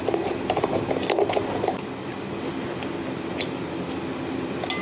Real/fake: real